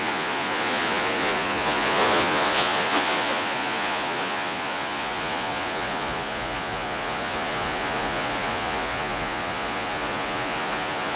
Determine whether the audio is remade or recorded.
remade